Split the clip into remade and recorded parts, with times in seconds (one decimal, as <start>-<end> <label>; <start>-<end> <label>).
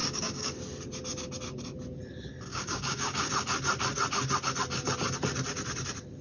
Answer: 0.0-0.6 remade; 0.6-2.5 recorded; 2.5-3.3 remade; 3.3-6.2 recorded